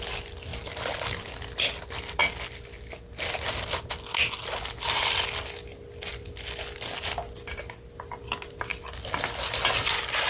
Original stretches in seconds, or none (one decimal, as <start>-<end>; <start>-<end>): 0.0-8.7; 9.5-10.3